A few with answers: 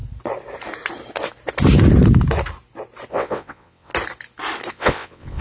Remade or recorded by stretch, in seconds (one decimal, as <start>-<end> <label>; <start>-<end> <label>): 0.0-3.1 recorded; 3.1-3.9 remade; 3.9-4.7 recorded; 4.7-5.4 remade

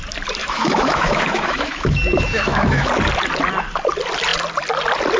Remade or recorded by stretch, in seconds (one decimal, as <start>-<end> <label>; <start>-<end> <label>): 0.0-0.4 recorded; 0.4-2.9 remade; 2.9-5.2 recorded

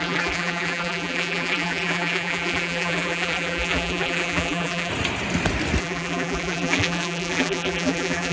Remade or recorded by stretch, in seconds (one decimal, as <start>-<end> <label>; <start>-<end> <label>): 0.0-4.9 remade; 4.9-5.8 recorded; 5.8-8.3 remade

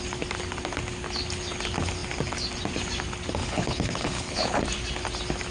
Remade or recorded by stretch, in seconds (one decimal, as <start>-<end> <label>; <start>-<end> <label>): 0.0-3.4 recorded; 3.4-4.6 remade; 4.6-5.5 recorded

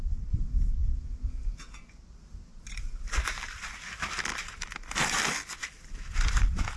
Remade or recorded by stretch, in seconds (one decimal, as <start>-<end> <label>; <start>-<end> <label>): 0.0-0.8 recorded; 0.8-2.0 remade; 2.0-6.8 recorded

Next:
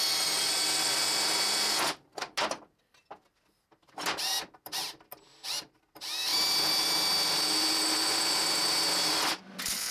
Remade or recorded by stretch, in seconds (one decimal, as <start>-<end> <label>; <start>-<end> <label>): 0.0-9.9 recorded